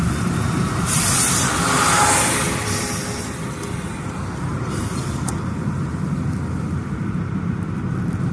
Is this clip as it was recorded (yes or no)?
yes